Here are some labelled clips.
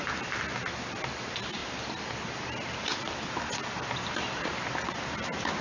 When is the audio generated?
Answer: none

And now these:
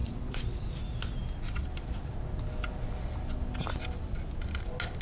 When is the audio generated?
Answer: 0.0-0.7

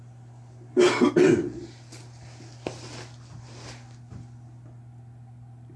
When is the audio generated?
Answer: none

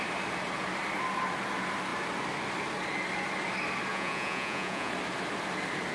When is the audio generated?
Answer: 3.9-4.9

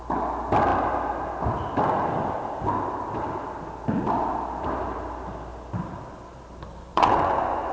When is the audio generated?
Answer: 6.9-7.7